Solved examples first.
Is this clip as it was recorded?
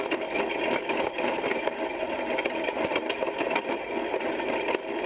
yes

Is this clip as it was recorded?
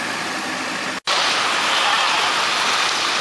yes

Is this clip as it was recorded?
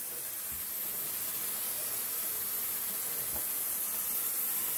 yes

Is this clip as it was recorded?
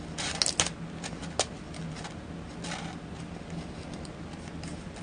yes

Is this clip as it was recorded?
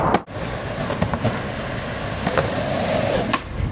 yes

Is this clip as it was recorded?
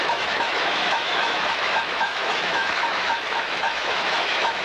no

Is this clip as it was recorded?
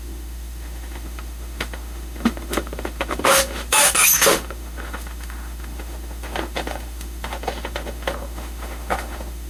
no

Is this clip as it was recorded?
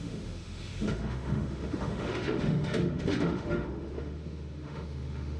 no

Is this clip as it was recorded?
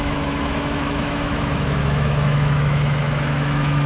no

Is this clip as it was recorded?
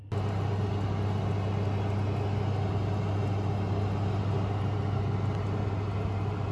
yes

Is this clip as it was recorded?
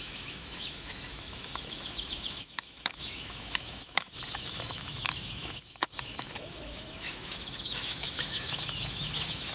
no